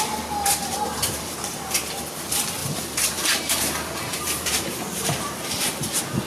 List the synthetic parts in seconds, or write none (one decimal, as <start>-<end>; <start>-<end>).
0.6-1.5; 2.6-5.8